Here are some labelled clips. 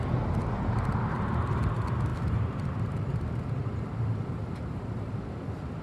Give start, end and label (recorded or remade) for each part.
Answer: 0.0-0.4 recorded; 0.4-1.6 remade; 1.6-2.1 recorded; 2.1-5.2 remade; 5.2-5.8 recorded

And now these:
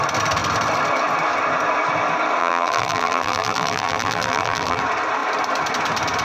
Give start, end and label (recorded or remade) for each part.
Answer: 0.0-2.4 recorded; 2.4-4.8 remade; 4.8-6.2 recorded

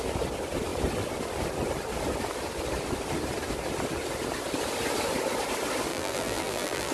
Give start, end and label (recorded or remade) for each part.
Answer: 0.0-5.9 recorded; 5.9-6.9 remade